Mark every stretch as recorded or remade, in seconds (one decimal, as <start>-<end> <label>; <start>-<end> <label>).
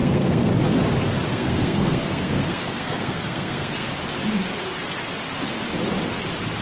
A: 0.0-0.5 remade; 0.5-1.3 recorded; 1.3-3.9 remade; 3.9-6.6 recorded